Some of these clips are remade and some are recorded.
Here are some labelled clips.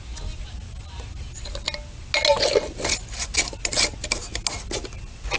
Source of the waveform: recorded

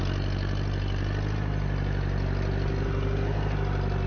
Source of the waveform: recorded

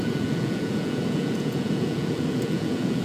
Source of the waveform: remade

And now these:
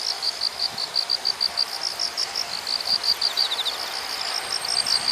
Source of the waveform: recorded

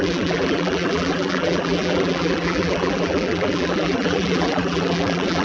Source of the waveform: remade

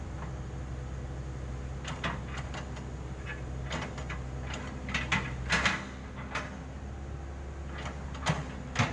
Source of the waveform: recorded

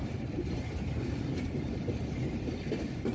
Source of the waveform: recorded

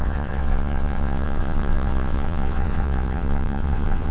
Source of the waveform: remade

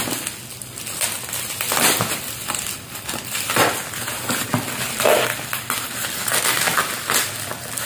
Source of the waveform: recorded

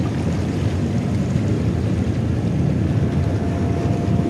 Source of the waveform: recorded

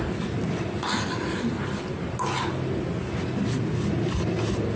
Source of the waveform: recorded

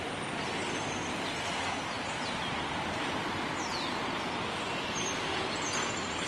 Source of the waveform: recorded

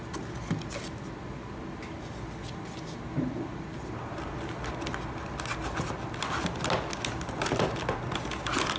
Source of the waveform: recorded